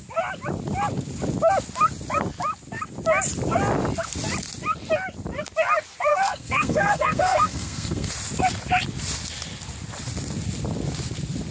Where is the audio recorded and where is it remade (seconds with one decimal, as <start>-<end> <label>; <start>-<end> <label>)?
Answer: 0.0-6.1 recorded; 6.1-8.1 remade; 8.1-11.5 recorded